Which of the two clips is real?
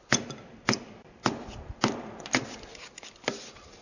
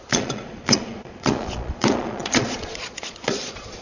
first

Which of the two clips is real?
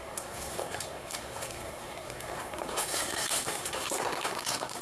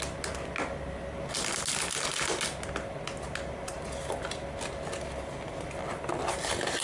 second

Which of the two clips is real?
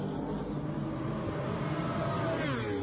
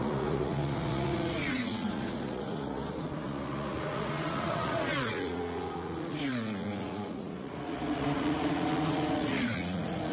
first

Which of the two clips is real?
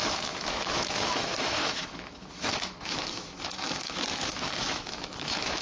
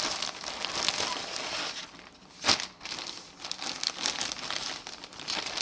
second